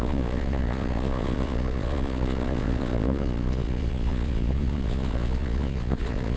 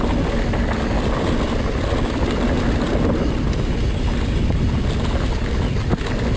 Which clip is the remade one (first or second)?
first